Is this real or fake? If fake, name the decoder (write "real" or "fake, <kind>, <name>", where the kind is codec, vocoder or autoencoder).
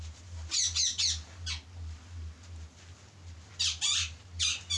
real